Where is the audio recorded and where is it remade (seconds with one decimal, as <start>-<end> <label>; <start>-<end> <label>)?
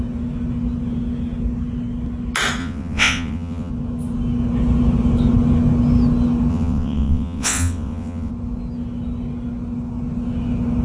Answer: 0.0-2.6 recorded; 2.6-3.7 remade; 3.7-6.5 recorded; 6.5-8.3 remade; 8.3-10.8 recorded